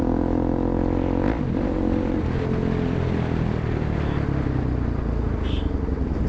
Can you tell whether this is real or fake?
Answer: real